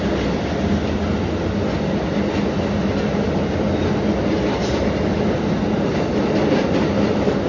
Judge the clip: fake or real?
real